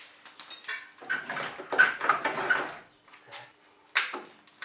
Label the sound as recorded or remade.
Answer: recorded